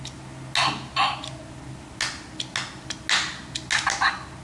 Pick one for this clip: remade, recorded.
recorded